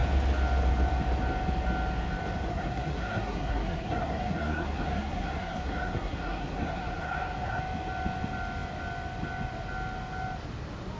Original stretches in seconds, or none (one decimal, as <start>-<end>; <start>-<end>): 0.0-2.5; 7.6-11.0